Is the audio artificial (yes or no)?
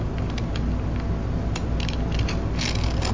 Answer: no